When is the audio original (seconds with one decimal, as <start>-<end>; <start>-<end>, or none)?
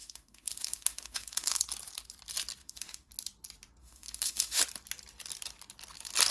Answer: 1.6-2.6; 3.1-3.8; 4.6-6.3